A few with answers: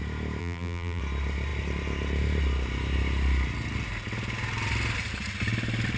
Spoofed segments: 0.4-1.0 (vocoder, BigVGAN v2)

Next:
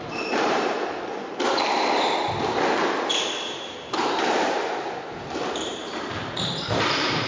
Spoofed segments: 0.0-1.6 (vocoder, BigVGAN v2); 3.1-7.3

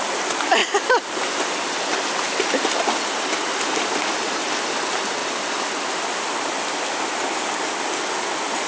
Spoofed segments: 0.6-3.5 (vocoder, BigVGAN v2); 5.2-6.5

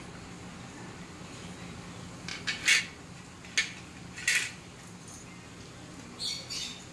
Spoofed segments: none

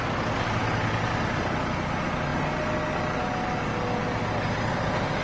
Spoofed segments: none